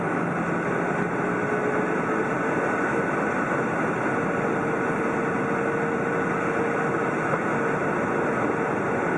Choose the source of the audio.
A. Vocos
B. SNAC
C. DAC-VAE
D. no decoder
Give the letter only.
D